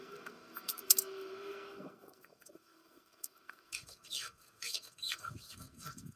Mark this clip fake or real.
fake